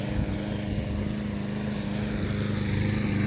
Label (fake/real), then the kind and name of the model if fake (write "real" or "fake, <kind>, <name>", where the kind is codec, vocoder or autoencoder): real